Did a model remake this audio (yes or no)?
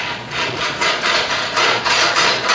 yes